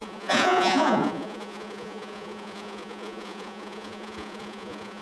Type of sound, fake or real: fake